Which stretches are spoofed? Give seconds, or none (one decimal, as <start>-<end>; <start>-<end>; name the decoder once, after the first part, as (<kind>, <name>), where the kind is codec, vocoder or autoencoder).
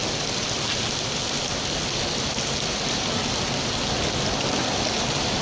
none